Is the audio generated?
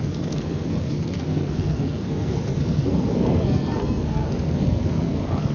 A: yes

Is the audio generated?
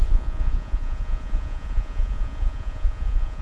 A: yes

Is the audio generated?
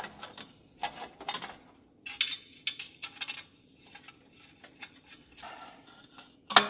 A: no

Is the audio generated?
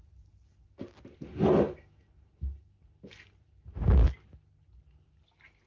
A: no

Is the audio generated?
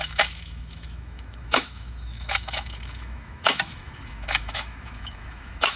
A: yes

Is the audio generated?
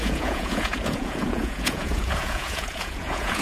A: yes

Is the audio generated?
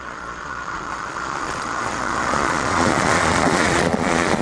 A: yes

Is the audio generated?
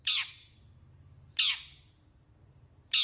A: no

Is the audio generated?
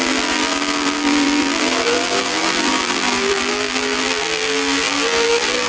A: yes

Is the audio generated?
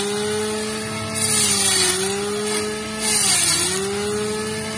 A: no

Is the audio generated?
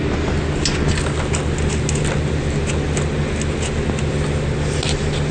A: no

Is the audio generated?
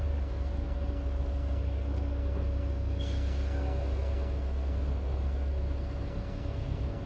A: yes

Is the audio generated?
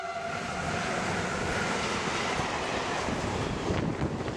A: no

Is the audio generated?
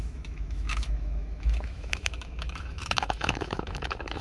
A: yes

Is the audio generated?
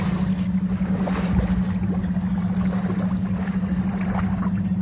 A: no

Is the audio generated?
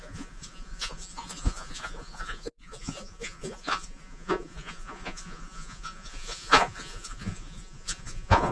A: yes